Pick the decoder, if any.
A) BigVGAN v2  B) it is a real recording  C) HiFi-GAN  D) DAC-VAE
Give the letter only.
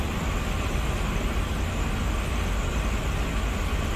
B